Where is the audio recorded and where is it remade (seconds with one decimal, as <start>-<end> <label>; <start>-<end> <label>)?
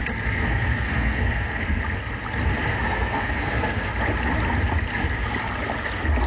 0.0-1.8 remade; 1.8-2.7 recorded; 2.7-3.9 remade; 3.9-6.3 recorded